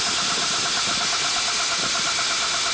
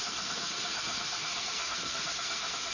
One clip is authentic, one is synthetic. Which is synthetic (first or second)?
second